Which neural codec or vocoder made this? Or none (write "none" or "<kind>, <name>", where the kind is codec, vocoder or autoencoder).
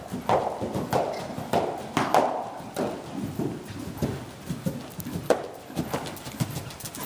none